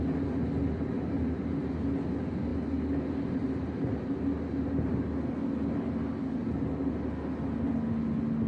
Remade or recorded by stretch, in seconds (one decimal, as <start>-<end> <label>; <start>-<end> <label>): 0.0-8.5 recorded